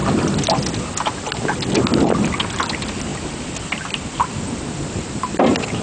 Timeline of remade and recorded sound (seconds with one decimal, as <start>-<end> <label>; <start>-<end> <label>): 0.0-5.8 recorded